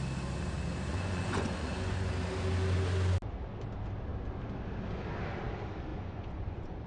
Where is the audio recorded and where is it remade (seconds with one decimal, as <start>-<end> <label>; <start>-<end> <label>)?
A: 0.0-0.9 recorded; 0.9-2.1 remade; 2.1-5.9 recorded; 5.9-6.9 remade

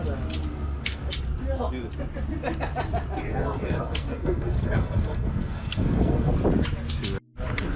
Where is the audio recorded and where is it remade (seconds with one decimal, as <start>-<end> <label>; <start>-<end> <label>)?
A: 0.0-0.5 recorded; 0.5-1.1 remade; 1.1-3.3 recorded; 3.3-6.3 remade; 6.3-7.8 recorded